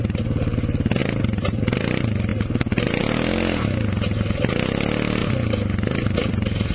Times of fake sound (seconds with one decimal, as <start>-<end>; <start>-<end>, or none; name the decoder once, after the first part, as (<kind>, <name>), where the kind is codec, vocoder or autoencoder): none